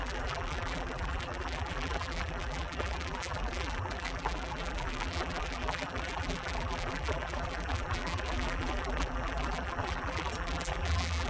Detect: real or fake fake